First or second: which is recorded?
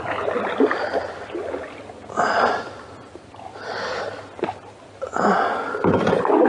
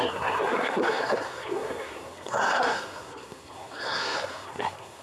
first